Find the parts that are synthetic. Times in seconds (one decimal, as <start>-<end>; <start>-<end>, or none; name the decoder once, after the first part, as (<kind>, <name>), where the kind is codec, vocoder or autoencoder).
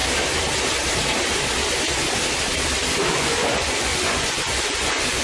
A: 3.1-5.2 (vocoder, Vocos)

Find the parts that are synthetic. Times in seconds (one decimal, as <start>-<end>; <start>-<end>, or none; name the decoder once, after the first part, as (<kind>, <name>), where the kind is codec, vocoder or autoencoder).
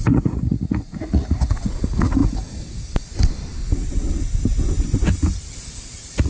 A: 0.0-2.2 (vocoder, Vocos); 5.8-6.3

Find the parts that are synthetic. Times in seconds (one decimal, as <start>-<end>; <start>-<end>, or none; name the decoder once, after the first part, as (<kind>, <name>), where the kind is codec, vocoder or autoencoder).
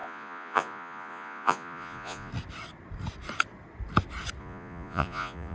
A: 0.0-2.3 (vocoder, Vocos); 4.4-5.5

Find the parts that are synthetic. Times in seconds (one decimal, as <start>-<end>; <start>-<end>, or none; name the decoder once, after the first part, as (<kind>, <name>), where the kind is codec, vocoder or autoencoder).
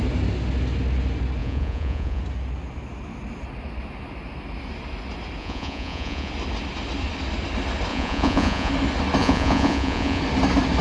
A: 1.4-2.2 (vocoder, Vocos); 5.4-6.3; 7.9-8.7; 9.2-10.2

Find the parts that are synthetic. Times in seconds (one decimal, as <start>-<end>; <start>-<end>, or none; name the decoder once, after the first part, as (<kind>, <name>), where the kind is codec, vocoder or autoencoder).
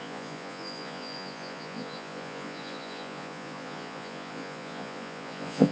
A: 0.0-5.7 (vocoder, Vocos)